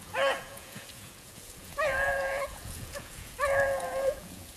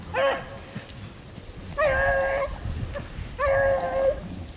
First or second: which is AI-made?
first